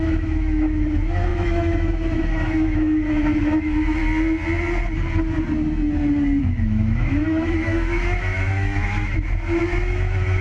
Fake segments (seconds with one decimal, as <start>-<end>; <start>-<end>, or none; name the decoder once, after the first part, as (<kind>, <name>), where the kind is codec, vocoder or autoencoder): 0.0-4.0 (autoencoder, DAC-VAE); 6.4-10.4